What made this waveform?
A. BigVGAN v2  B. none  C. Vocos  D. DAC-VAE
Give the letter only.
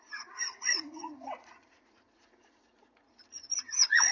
C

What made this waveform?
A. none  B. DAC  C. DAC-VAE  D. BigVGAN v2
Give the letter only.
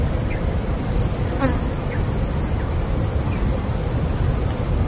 A